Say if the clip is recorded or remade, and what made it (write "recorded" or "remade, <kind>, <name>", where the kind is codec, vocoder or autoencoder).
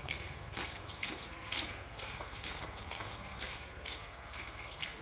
remade, codec, SNAC